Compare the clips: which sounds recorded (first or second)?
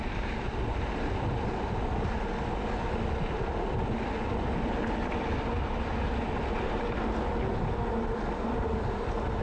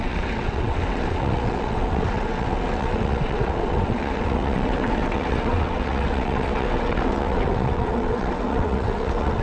first